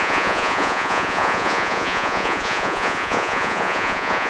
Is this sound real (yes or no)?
no